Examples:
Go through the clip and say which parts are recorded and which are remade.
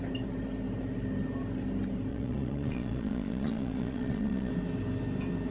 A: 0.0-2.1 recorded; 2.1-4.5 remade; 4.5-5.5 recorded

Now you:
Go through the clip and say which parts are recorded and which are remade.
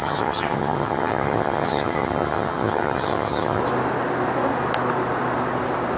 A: 0.0-3.6 remade; 3.6-6.0 recorded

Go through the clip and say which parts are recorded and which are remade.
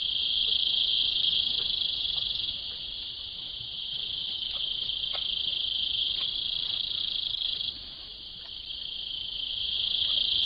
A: 0.0-1.3 recorded; 1.3-5.0 remade; 5.0-7.5 recorded; 7.5-10.1 remade; 10.1-10.5 recorded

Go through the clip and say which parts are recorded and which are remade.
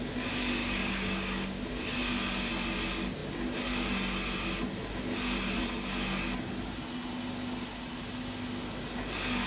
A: 0.0-0.6 recorded; 0.6-1.6 remade; 1.6-9.5 recorded